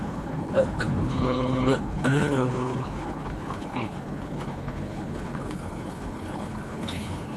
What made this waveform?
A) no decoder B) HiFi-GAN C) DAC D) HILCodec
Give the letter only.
D